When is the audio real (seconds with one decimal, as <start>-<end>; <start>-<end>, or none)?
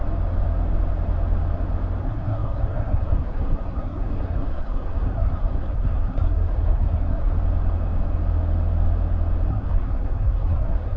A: 0.0-2.0; 7.3-9.5